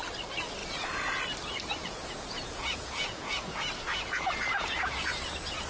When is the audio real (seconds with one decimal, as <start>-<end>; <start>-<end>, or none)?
0.0-0.6; 1.2-1.8; 5.2-5.7